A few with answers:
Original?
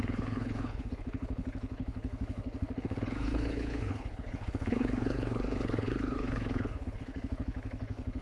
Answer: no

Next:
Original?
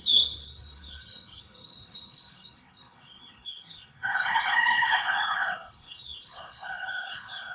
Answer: no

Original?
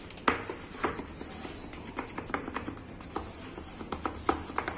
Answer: yes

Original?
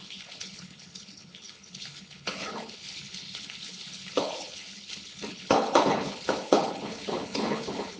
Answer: no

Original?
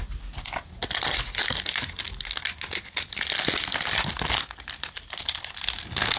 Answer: yes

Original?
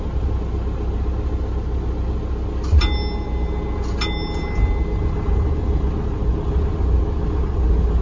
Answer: yes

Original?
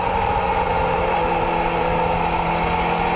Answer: yes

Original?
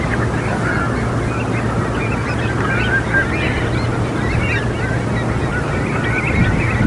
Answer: yes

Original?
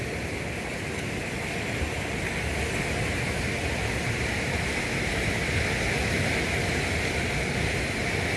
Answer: yes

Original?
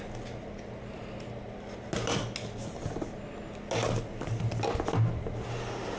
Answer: yes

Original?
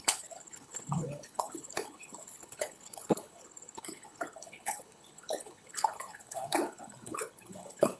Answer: no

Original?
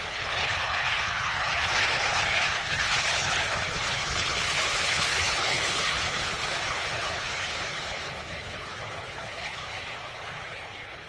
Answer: no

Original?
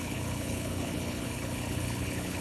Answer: no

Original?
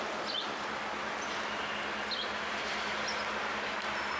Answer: yes